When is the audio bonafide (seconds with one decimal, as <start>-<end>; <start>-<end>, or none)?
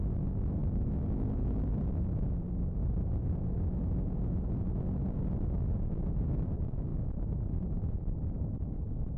0.0-0.6; 2.3-6.9